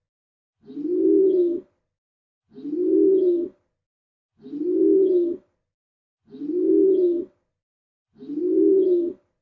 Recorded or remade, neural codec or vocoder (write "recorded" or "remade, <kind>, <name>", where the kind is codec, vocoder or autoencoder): recorded